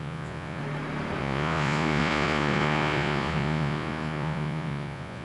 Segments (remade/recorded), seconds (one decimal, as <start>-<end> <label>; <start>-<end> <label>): 0.0-0.6 remade; 0.6-1.2 recorded; 1.2-5.2 remade